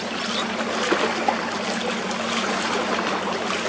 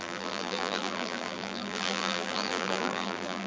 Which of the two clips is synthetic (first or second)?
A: second